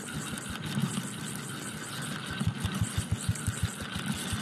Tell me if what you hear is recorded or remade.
recorded